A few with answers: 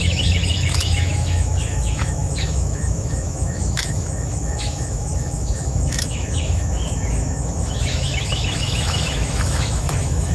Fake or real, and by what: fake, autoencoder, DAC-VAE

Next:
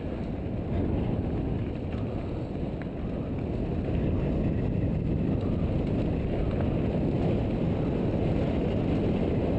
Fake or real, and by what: real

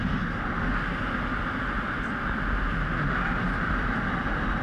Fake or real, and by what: real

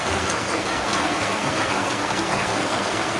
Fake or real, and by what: fake, codec, SNAC